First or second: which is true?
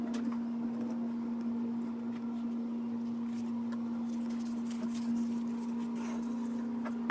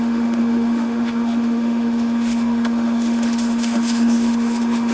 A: first